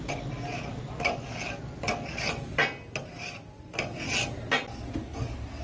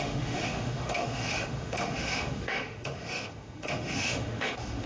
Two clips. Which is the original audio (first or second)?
first